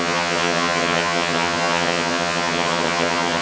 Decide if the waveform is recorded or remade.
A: remade